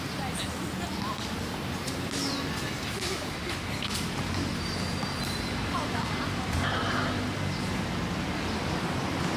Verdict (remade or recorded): recorded